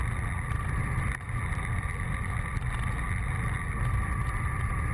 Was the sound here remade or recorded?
recorded